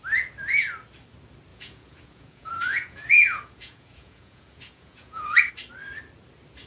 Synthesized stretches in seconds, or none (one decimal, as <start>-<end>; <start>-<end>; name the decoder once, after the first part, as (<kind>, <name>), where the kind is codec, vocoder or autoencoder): 1.5-5.5 (vocoder, Vocos)